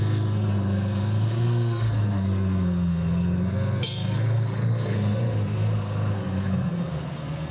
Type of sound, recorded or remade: remade